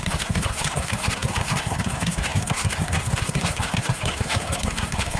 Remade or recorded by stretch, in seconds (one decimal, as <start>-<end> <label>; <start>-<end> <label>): 0.0-5.2 remade